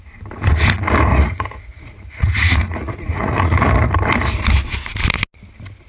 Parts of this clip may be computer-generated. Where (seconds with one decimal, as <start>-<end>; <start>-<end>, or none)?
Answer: 1.1-3.9